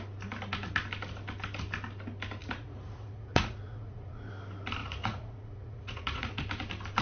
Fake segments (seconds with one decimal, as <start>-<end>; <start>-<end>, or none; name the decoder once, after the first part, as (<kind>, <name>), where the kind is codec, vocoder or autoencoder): 2.4-4.3 (vocoder, Vocos); 4.8-6.3